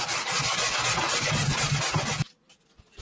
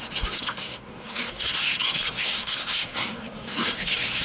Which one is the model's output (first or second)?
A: second